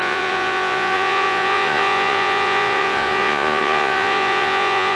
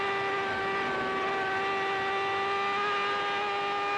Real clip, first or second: second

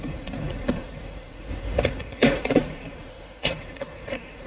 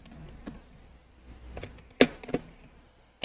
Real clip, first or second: second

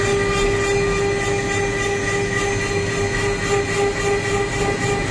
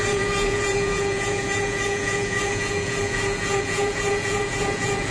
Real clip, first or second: first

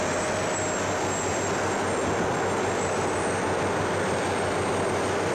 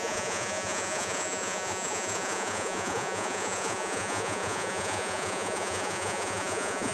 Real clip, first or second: first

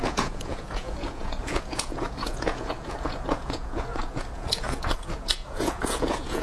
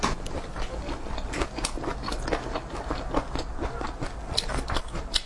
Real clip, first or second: second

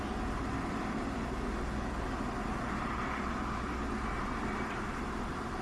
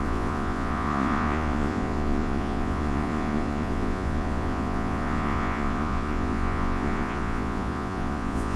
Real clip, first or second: first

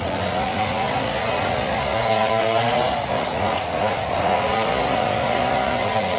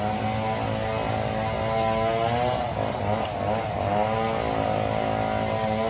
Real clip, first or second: second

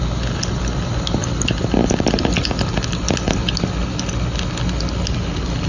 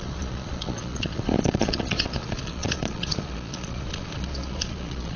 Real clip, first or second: first